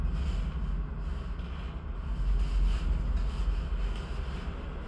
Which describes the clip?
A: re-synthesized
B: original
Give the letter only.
B